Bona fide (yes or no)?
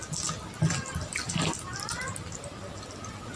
yes